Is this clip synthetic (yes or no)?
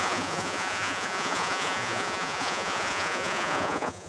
yes